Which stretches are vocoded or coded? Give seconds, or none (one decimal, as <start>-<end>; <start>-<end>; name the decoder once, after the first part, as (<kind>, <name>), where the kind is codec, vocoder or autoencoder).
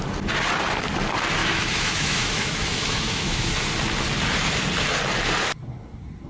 1.4-3.5 (autoencoder, DAC-VAE)